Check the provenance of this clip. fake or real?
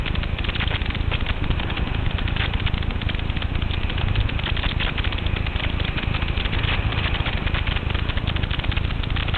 real